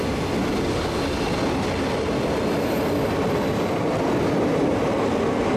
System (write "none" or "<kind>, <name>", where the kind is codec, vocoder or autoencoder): none